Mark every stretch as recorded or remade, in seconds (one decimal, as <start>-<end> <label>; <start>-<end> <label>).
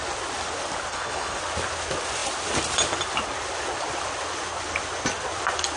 0.0-0.9 recorded; 0.9-1.4 remade; 1.4-5.8 recorded